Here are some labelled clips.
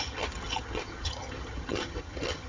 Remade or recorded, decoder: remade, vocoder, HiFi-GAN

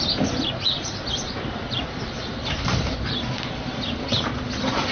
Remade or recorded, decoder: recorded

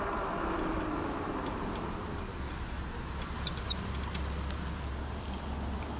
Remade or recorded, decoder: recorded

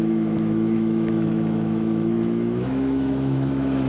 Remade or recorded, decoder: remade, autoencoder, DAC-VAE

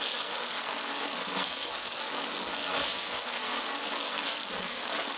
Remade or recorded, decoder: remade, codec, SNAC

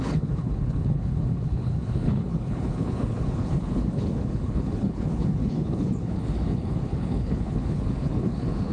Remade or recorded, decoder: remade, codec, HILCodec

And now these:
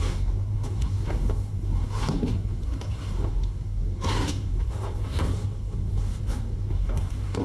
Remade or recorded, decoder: remade, codec, SNAC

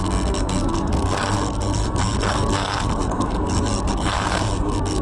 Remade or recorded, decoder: remade, codec, SNAC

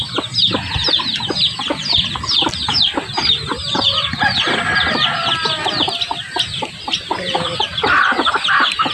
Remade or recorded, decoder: recorded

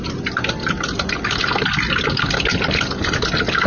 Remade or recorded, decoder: recorded